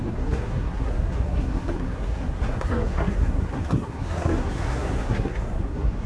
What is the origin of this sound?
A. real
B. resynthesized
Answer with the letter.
B